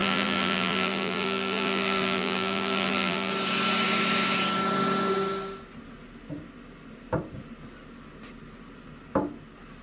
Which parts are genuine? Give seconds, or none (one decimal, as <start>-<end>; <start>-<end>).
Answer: 3.3-9.8

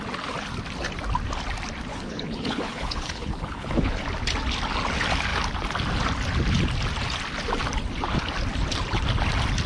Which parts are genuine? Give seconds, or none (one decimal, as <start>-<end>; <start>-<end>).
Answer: 0.0-1.9; 4.0-9.7